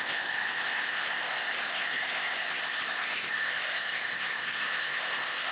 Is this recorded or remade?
remade